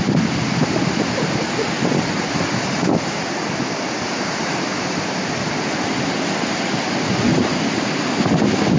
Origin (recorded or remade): recorded